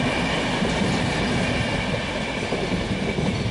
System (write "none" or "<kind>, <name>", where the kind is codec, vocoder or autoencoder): none